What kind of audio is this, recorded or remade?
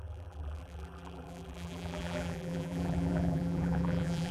remade